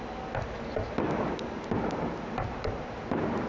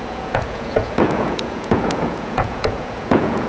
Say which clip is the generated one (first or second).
second